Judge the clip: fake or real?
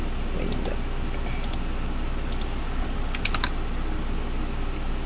real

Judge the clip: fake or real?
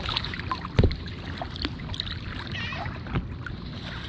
real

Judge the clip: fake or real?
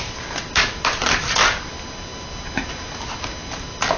real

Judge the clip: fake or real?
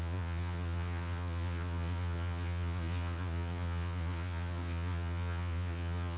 fake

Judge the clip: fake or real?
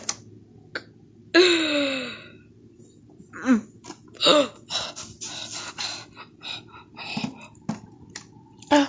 real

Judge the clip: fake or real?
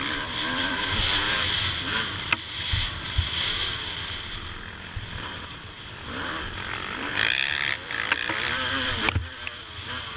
fake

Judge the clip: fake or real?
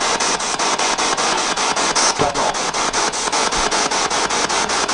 fake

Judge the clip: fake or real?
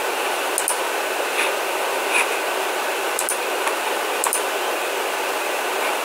real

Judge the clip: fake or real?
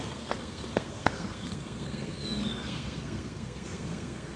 fake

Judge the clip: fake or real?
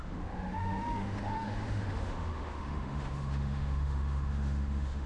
fake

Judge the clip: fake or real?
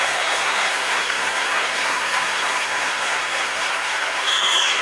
fake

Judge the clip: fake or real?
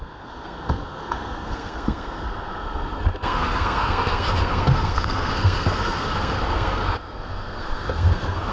fake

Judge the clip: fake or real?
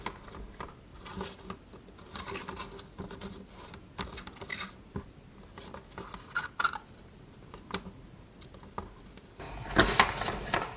real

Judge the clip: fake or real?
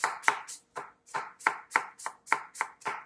real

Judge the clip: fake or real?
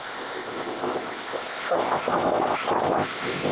fake